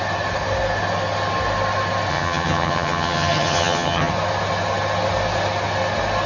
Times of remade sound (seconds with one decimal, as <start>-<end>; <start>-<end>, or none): 2.1-4.1